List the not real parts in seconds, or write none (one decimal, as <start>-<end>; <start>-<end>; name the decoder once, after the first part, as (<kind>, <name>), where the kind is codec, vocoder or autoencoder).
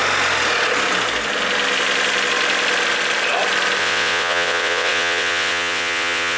3.8-6.4 (vocoder, WaveNeXt)